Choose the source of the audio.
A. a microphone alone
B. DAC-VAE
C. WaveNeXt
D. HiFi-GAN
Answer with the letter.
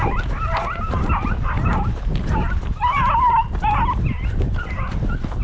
A